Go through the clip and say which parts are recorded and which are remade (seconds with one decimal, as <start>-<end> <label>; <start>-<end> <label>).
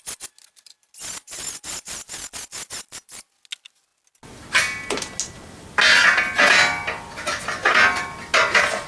0.0-8.9 recorded